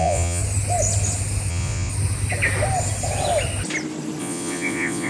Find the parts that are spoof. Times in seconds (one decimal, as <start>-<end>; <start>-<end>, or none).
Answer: 0.0-0.4; 1.5-1.9; 4.2-5.1